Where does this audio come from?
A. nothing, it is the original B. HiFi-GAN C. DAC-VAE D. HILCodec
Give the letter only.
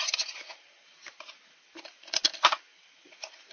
A